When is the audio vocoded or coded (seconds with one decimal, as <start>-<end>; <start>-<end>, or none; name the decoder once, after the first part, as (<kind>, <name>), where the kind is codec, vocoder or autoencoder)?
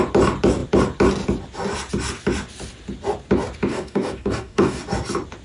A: 3.7-4.8 (codec, DAC)